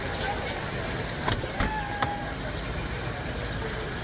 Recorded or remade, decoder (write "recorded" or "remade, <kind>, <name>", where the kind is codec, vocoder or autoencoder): recorded